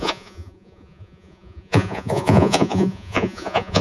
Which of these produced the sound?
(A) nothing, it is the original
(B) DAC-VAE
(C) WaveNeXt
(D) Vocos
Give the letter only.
D